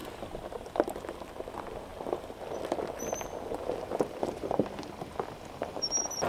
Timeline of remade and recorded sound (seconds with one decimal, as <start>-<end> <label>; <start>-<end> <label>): 0.0-1.5 remade; 1.5-1.9 recorded; 1.9-5.7 remade; 5.7-6.3 recorded